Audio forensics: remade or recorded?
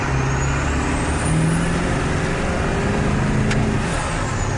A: recorded